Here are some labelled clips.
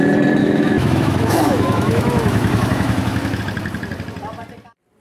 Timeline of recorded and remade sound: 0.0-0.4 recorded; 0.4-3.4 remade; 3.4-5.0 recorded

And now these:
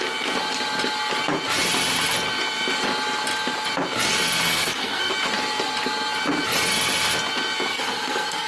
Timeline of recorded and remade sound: 0.0-4.5 recorded; 4.5-5.1 remade; 5.1-7.7 recorded; 7.7-8.5 remade

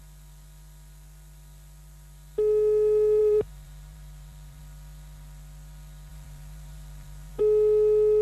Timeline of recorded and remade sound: 0.0-3.2 recorded; 3.2-4.6 remade; 4.6-6.1 recorded; 6.1-7.4 remade; 7.4-8.2 recorded

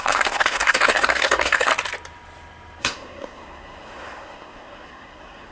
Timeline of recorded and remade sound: 0.0-1.7 remade; 1.7-2.8 recorded; 2.8-5.5 remade